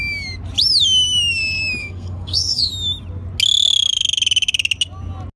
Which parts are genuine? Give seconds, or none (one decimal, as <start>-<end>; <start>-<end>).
0.0-1.8; 2.7-5.4

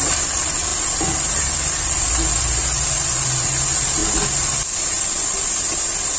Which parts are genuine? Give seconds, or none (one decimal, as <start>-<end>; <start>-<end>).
0.0-6.2

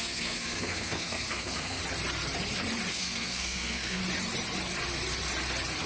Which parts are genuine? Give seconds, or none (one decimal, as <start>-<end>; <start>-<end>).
1.8-2.9; 4.0-5.9

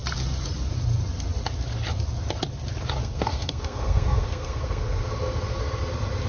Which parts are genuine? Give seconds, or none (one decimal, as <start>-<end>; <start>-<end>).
0.0-3.0; 5.1-6.3

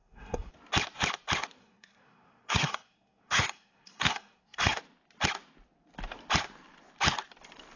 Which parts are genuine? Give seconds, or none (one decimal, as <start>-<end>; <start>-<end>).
0.5-1.6; 4.8-7.8

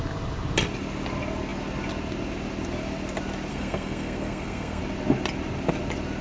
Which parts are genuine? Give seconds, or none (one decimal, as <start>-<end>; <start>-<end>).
0.0-3.5; 4.8-6.2

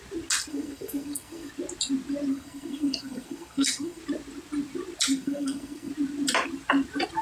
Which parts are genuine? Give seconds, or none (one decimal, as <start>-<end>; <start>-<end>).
0.0-0.5; 1.5-2.3; 4.0-5.1; 5.9-7.2